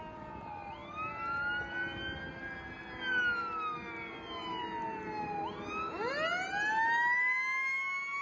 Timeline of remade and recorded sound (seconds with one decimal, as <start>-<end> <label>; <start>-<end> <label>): 0.0-8.2 recorded

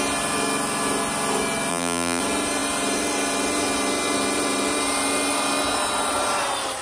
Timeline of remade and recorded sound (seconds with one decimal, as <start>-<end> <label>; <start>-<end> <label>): 0.0-1.7 recorded; 1.7-2.2 remade; 2.2-6.8 recorded

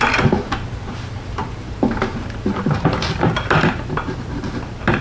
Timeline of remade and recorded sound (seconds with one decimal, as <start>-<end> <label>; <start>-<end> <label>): 0.0-1.4 recorded; 1.4-4.4 remade; 4.4-5.0 recorded

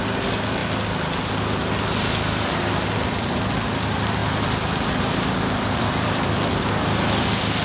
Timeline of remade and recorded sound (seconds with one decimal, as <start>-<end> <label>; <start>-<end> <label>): 0.0-4.2 recorded; 4.2-6.6 remade; 6.6-7.6 recorded